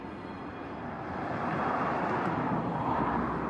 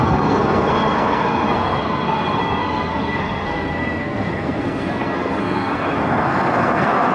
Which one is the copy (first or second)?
second